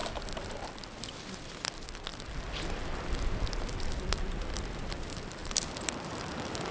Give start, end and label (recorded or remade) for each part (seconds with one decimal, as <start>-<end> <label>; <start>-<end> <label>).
0.0-0.7 remade; 0.7-5.4 recorded; 5.4-6.7 remade